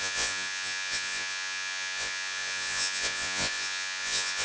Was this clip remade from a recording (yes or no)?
yes